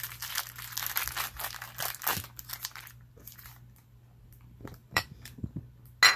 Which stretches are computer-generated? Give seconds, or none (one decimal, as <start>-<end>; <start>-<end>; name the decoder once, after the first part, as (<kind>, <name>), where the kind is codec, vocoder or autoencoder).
4.8-5.7 (vocoder, BigVGAN v2)